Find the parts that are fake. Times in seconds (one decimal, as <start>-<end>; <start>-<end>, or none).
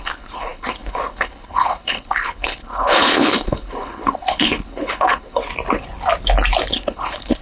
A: 0.0-5.5; 6.7-7.4